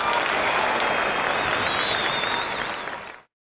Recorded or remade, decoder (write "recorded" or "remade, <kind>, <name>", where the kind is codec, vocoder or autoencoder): recorded